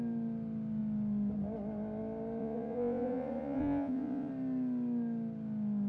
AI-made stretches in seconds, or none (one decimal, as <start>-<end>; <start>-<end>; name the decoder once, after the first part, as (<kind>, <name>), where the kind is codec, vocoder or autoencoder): 2.4-4.3 (vocoder, Vocos)